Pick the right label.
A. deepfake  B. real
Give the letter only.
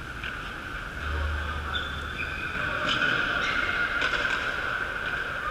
B